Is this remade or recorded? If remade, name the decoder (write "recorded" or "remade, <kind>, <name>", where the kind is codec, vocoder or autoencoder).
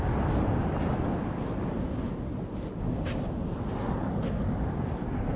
recorded